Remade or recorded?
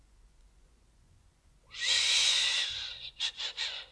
remade